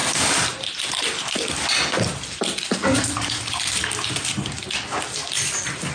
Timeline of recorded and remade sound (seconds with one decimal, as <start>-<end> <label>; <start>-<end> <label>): 0.0-5.9 recorded